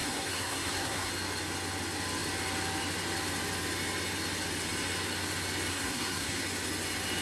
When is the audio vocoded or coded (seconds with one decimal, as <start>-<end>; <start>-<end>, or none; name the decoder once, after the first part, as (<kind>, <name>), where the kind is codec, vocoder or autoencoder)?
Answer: 0.0-1.1 (codec, SNAC); 5.7-6.4